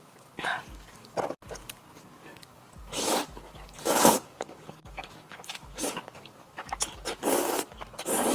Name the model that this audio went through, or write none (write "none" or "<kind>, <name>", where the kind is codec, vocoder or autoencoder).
codec, DAC